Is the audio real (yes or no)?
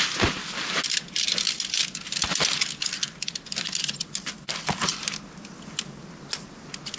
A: yes